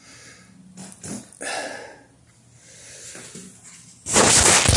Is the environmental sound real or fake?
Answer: real